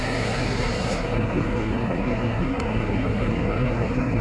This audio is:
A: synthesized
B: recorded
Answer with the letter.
A